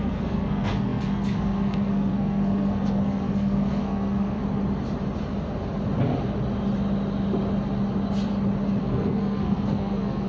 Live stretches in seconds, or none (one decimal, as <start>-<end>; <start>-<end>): 4.4-8.8